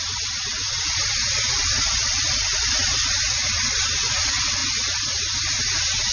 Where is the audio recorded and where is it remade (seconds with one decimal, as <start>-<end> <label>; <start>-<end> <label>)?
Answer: 0.0-6.1 recorded